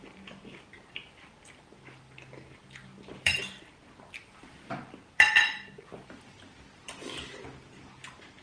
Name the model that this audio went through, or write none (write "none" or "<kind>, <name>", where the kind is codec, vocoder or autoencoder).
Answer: vocoder, BigVGAN v2